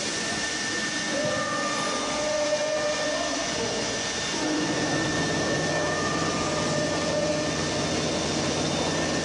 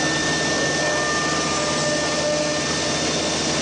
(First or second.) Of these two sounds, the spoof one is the first